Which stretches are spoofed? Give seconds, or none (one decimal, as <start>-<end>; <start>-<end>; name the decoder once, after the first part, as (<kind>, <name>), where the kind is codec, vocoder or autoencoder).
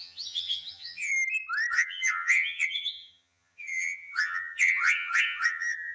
0.0-1.1 (vocoder, HiFi-GAN); 1.7-5.9